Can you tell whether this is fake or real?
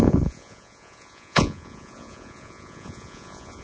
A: fake